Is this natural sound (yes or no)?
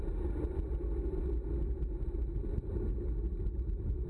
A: yes